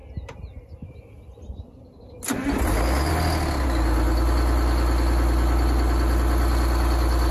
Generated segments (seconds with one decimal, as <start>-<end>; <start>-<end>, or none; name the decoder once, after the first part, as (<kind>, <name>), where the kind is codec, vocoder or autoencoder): none